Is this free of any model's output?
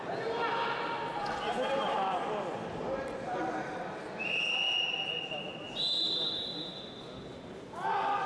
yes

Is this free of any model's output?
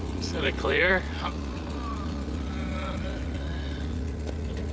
no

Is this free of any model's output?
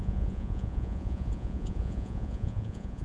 no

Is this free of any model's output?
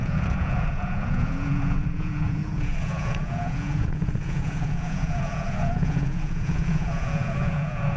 no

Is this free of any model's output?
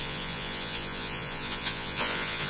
no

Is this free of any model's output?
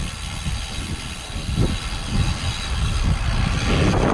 yes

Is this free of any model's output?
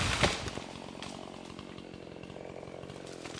yes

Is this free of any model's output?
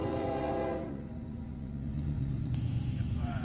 no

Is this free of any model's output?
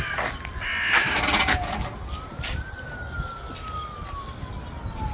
yes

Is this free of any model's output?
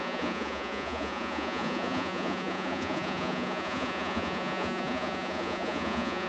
no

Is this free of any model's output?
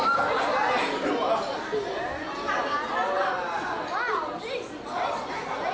yes